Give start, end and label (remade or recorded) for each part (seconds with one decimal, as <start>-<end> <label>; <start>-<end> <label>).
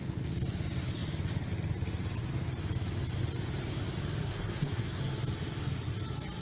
0.0-4.2 recorded; 4.2-5.0 remade; 5.0-6.4 recorded